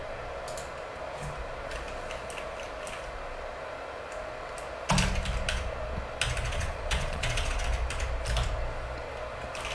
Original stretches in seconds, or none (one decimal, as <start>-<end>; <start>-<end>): 0.0-6.5; 7.6-9.7